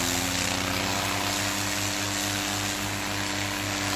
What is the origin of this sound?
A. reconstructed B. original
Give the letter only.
B